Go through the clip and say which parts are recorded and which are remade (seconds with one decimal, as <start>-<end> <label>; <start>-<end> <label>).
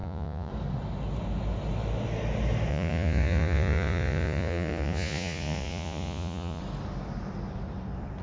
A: 0.0-0.5 remade; 0.5-2.7 recorded; 2.7-6.6 remade; 6.6-8.2 recorded